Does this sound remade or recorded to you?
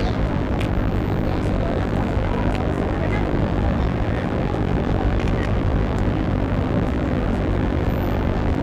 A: remade